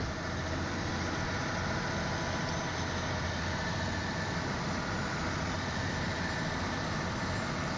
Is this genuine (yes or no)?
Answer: yes